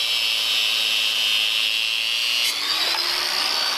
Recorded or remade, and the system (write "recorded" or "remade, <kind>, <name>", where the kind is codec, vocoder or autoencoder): recorded